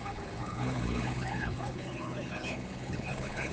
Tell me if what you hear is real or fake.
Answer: fake